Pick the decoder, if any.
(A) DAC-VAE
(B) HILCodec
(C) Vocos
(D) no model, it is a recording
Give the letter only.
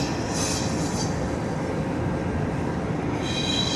D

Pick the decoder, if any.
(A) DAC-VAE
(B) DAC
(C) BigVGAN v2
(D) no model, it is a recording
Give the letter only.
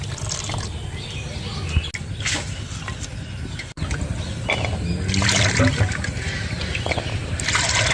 D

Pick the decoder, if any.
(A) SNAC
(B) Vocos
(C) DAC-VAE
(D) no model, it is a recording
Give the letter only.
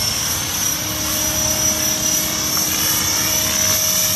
D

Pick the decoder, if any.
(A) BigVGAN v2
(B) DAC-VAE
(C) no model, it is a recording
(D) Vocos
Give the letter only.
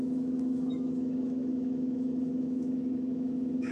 B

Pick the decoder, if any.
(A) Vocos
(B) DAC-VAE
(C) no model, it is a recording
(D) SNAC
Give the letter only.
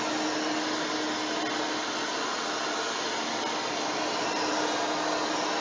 C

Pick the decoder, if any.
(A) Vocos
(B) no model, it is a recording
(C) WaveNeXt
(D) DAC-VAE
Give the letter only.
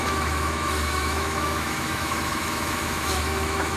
D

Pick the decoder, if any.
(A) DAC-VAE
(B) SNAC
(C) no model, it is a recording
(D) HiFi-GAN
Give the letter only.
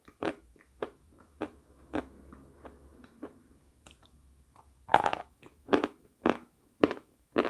A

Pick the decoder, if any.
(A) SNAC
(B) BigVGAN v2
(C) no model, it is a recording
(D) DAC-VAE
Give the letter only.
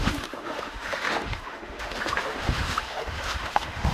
D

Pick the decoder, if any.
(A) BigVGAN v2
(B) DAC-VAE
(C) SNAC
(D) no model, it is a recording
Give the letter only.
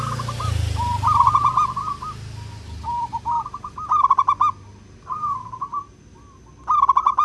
D